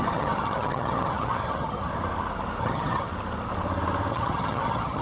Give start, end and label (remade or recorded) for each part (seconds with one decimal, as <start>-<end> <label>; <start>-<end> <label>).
0.0-1.9 remade; 1.9-2.6 recorded; 2.6-3.1 remade; 3.1-4.1 recorded; 4.1-5.0 remade